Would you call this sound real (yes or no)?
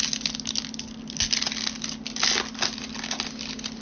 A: yes